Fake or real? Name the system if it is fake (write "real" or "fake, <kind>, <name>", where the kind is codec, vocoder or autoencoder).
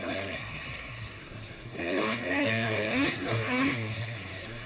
fake, codec, SNAC